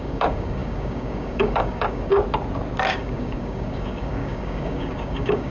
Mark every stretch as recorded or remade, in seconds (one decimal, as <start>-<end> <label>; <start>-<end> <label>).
0.0-2.1 remade; 2.1-2.9 recorded; 2.9-5.5 remade